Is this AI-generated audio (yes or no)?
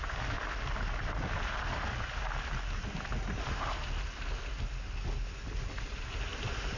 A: no